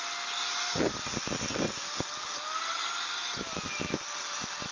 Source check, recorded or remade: recorded